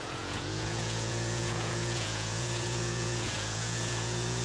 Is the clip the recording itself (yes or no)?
no